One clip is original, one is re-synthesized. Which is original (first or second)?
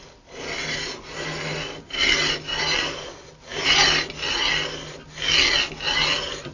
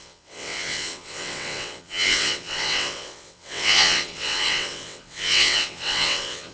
first